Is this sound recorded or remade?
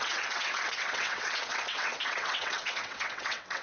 remade